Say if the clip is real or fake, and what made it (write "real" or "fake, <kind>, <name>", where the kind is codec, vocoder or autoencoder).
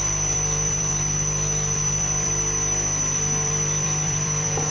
fake, vocoder, BigVGAN v2